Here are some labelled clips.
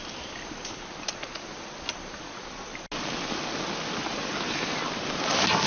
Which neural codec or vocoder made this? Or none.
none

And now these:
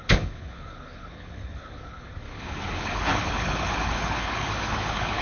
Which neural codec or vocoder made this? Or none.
codec, HILCodec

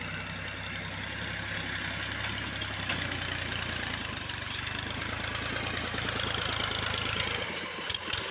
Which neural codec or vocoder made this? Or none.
none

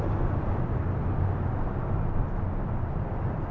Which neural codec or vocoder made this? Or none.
none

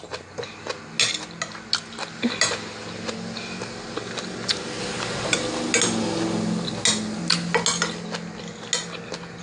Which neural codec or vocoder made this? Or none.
none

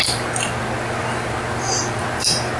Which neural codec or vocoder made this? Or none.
none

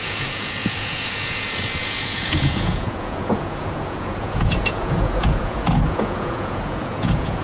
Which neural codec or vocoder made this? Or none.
vocoder, Vocos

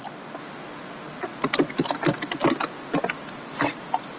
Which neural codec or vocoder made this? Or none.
none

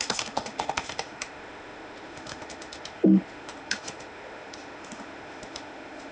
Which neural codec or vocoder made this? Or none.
autoencoder, DAC-VAE